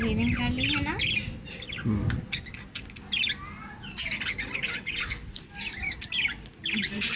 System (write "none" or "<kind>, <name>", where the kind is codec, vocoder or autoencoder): none